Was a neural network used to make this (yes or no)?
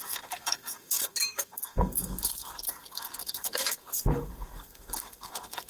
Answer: yes